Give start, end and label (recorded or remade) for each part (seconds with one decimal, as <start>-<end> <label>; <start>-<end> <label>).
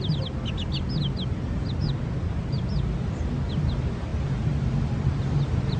0.0-5.8 recorded